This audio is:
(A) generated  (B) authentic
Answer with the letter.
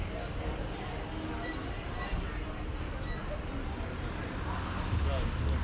B